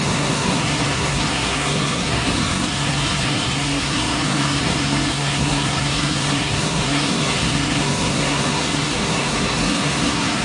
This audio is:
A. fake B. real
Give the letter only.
A